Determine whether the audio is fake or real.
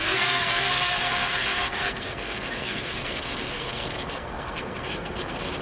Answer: fake